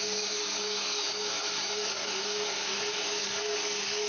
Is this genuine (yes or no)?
no